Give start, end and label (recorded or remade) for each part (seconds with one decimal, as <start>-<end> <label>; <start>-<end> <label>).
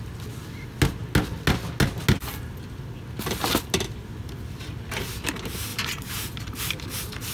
0.0-5.7 recorded; 5.7-6.6 remade; 6.6-7.3 recorded